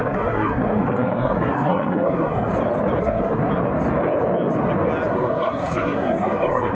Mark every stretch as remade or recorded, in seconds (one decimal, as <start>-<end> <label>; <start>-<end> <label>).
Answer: 0.0-2.5 remade; 2.5-3.0 recorded; 3.0-3.4 remade; 3.4-5.1 recorded; 5.1-6.7 remade

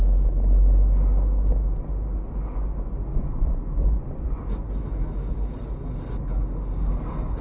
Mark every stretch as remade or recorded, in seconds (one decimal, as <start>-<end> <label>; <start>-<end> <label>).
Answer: 0.0-3.1 recorded; 3.1-4.4 remade; 4.4-7.4 recorded

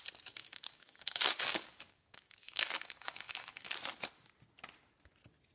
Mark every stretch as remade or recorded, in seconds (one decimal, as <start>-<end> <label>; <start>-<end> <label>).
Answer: 0.0-0.4 recorded; 0.4-3.7 remade; 3.7-5.5 recorded

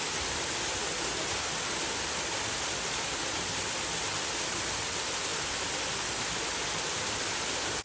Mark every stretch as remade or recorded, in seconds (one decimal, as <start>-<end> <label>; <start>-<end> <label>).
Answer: 0.0-7.8 recorded

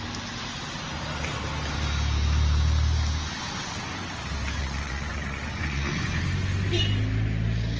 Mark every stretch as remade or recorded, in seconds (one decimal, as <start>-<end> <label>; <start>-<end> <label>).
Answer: 0.0-4.6 recorded; 4.6-6.2 remade; 6.2-7.8 recorded